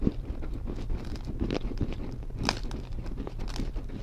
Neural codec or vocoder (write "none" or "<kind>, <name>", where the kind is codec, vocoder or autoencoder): vocoder, BigVGAN v2